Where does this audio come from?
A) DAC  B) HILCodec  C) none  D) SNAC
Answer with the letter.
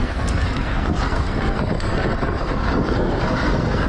D